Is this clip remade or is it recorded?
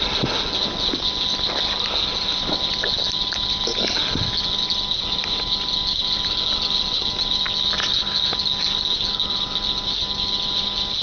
recorded